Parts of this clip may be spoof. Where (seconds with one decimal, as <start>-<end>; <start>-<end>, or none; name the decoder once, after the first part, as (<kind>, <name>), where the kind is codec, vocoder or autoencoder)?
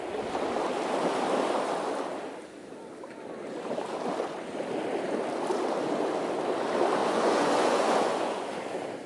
7.0-8.5 (vocoder, Vocos)